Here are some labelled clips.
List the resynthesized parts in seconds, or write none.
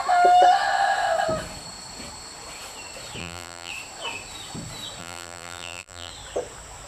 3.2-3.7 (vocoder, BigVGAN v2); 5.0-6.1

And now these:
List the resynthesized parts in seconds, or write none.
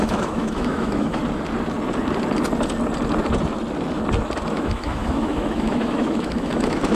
0.0-1.2 (autoencoder, DAC-VAE); 4.5-6.9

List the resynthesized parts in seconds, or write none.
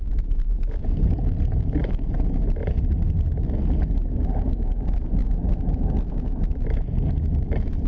none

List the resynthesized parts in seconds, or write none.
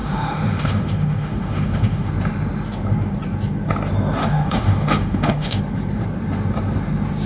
0.0-2.1 (autoencoder, DAC-VAE); 4.2-5.6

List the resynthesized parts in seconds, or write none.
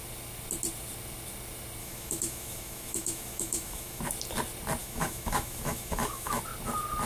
1.8-4.0 (autoencoder, DAC-VAE); 4.8-6.4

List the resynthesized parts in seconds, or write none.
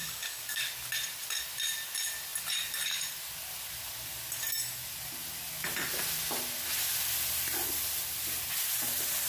0.0-0.6 (codec, DAC)